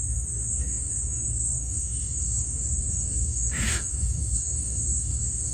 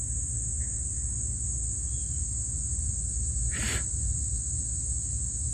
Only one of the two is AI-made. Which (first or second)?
first